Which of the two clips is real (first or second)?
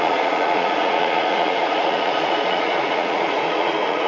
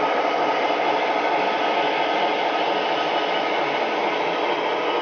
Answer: second